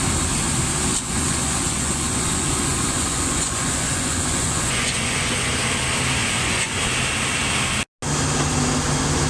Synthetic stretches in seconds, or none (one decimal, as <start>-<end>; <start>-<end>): 0.9-5.5; 6.2-6.8